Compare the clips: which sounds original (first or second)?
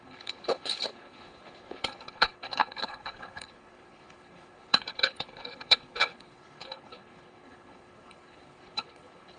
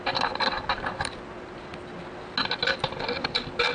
second